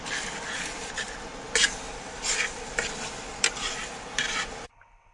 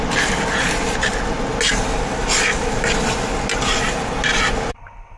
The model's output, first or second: first